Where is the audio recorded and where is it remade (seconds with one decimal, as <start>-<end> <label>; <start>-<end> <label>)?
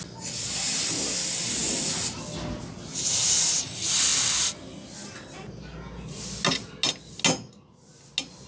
0.0-8.5 recorded